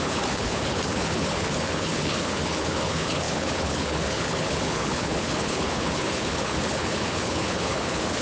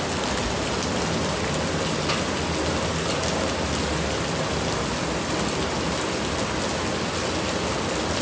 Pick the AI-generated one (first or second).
first